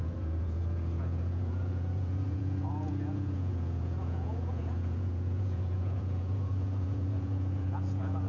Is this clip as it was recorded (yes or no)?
no